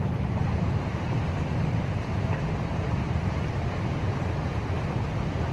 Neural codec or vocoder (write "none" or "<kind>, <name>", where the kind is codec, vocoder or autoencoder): vocoder, BigVGAN v2